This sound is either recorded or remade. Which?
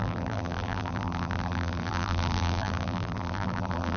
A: remade